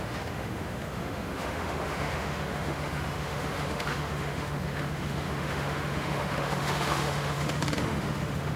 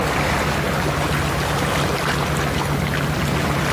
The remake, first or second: first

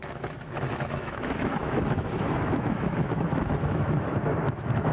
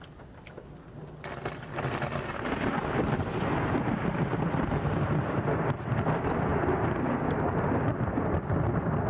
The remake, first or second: first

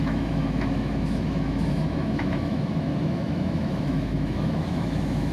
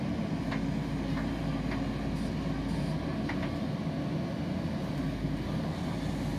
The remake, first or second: first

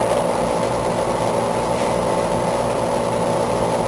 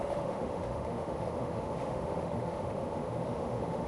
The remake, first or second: second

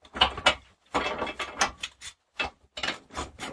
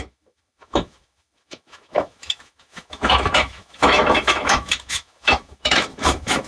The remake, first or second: second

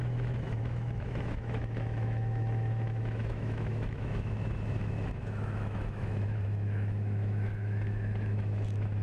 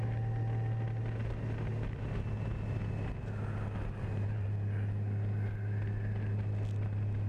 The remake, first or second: first